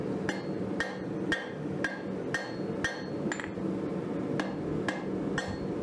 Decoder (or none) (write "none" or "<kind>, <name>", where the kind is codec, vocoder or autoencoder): none